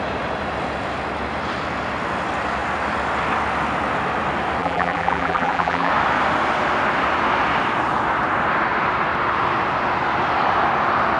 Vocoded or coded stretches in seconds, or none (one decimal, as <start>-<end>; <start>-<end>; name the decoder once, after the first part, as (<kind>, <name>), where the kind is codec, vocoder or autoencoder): 4.6-5.9 (vocoder, BigVGAN v2)